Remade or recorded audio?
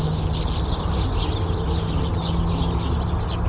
recorded